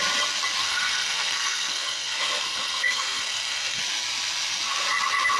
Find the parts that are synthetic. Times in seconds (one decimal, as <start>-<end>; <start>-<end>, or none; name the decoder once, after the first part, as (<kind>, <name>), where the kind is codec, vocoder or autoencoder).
0.6-3.8 (codec, SNAC)